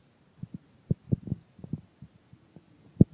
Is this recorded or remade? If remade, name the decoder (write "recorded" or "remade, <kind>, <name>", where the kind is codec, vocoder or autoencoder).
remade, vocoder, BigVGAN v2